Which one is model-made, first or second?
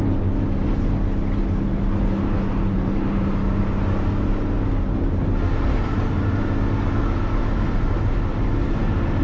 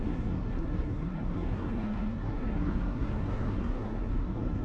second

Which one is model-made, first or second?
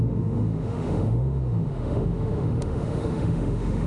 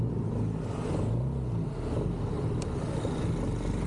first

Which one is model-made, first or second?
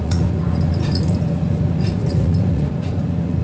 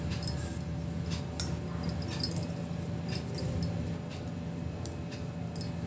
first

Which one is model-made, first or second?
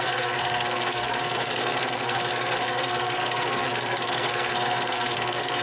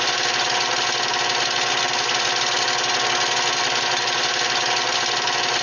first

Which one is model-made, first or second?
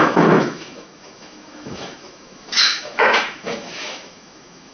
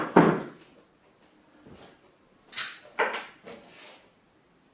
first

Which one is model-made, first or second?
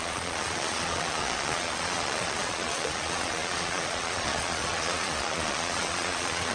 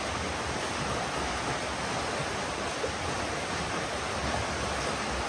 first